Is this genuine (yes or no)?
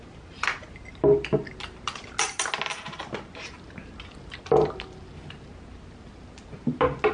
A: yes